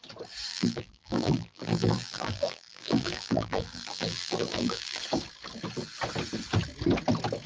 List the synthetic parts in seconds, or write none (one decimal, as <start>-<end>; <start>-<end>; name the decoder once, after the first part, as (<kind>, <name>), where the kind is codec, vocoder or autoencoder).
0.5-5.0 (vocoder, BigVGAN v2)